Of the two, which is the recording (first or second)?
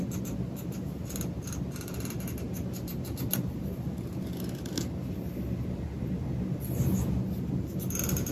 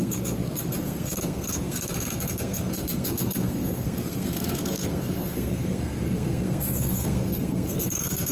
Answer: first